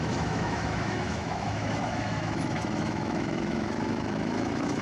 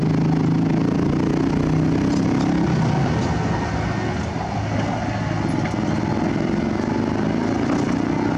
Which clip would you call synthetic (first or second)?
first